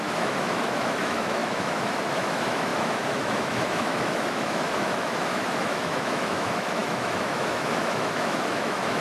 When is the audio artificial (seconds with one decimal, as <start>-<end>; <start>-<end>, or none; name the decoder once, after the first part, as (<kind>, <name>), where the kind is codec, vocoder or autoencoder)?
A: 0.0-9.0 (autoencoder, DAC-VAE)